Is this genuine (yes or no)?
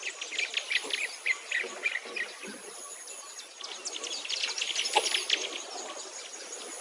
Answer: yes